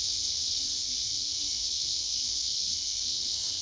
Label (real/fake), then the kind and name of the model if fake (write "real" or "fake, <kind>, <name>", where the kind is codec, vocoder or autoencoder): fake, codec, SNAC